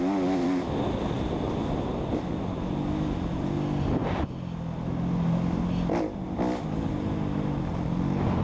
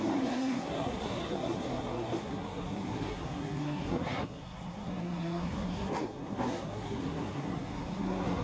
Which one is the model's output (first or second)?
second